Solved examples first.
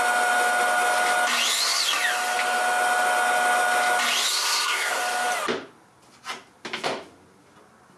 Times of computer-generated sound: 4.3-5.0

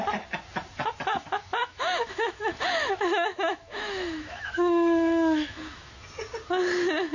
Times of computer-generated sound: 1.6-5.9

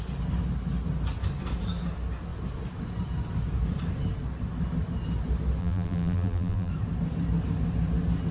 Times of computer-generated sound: 5.6-6.7

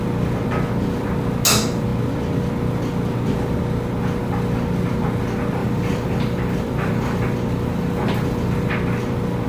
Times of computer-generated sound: 5.6-8.7

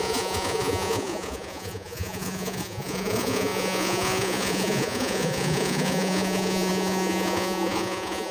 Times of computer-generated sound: 0.0-8.3

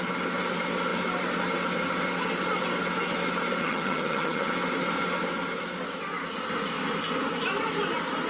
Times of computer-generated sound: 3.6-4.5

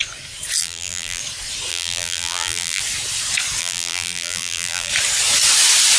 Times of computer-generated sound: 0.6-1.2; 1.7-2.8; 3.6-4.9